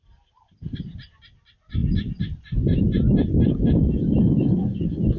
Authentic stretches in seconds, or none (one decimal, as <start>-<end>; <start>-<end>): 0.0-5.2